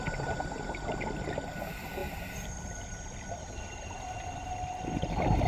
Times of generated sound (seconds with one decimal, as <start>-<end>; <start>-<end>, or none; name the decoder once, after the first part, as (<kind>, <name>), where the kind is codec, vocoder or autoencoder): none